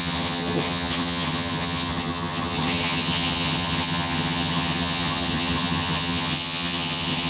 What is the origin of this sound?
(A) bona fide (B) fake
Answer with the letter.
B